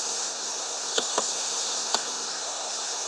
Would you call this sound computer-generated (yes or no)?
yes